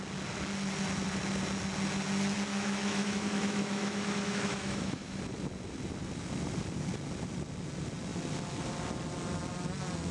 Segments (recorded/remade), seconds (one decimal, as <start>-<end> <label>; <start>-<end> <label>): 0.0-2.5 recorded; 2.5-5.2 remade; 5.2-10.1 recorded